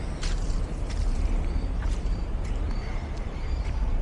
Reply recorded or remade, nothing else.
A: remade